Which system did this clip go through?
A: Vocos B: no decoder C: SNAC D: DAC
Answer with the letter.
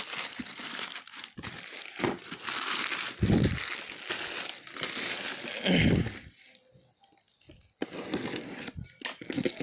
B